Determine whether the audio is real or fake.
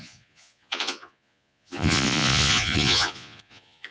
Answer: fake